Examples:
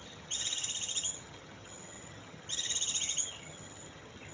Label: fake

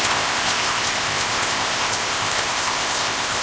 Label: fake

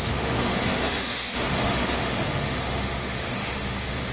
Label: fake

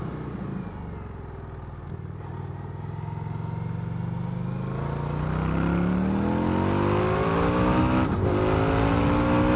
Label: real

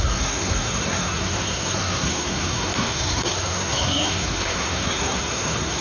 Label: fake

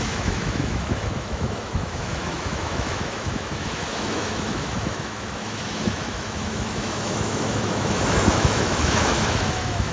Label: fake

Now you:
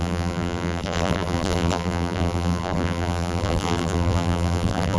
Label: fake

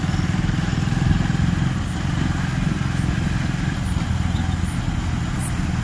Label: real